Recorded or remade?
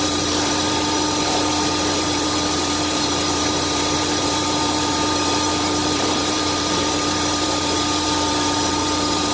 remade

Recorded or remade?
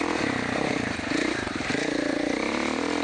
remade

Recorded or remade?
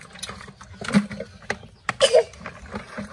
recorded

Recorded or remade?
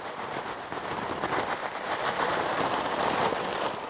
remade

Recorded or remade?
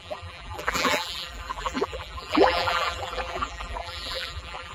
remade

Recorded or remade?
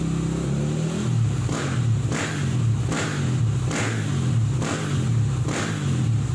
recorded